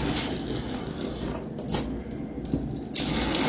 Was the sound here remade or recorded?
recorded